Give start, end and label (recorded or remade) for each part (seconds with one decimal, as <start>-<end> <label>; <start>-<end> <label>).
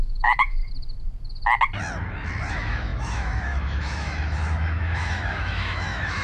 0.0-0.6 remade; 0.6-2.5 recorded; 2.5-6.2 remade